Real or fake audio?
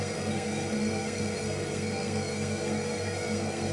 fake